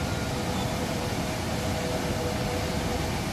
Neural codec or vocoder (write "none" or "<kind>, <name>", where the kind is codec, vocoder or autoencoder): none